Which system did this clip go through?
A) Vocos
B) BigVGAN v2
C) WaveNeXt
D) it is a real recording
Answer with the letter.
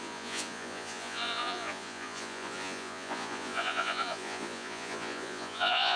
A